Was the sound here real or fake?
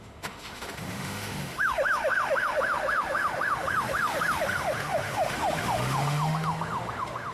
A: fake